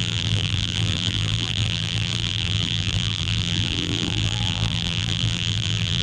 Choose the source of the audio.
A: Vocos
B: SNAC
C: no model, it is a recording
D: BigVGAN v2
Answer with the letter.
D